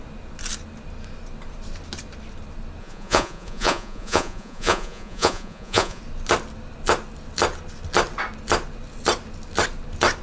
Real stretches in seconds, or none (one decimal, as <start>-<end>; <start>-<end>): 0.0-2.8; 6.0-10.2